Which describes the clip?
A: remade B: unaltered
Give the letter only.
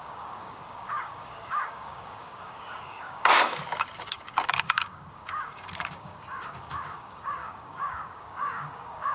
A